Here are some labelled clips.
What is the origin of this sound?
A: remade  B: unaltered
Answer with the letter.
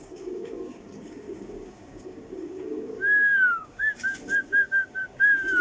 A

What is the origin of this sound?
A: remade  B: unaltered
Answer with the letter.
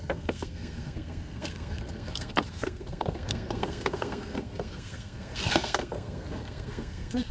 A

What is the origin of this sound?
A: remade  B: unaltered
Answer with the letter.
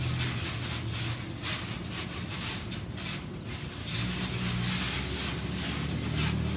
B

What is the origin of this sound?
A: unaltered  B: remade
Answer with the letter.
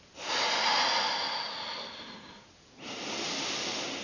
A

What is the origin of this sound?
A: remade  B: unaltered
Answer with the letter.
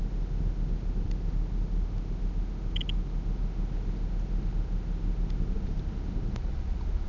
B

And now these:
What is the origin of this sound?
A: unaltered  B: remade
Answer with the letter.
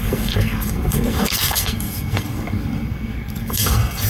B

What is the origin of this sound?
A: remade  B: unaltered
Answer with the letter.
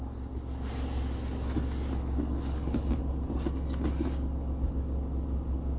B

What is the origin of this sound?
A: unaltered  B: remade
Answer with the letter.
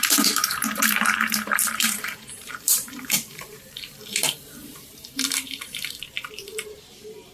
B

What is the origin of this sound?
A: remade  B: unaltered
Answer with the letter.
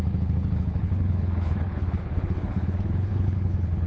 A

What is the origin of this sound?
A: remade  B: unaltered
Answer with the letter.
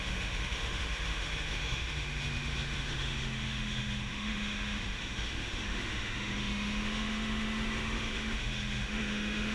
A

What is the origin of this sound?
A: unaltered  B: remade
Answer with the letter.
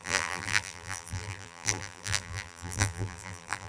B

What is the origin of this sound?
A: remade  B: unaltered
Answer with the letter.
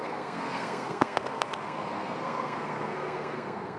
A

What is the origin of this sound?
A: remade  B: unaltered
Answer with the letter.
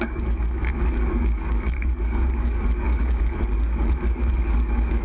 A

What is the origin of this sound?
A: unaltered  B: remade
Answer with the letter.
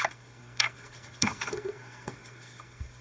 B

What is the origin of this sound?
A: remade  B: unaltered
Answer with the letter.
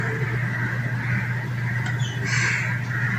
B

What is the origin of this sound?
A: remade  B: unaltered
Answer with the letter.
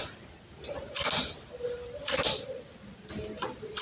B